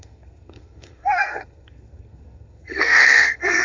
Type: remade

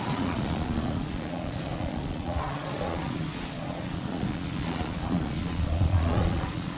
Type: remade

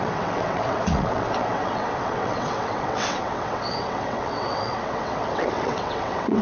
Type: remade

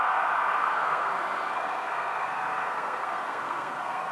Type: remade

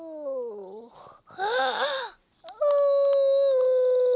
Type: recorded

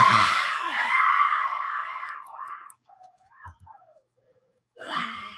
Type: remade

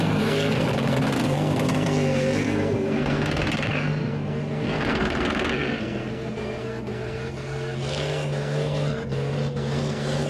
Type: remade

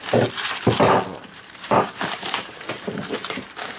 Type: remade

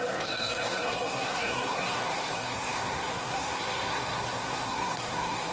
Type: remade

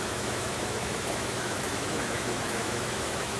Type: remade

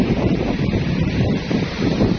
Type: remade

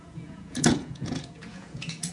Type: remade